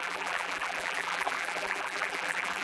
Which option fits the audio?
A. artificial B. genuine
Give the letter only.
A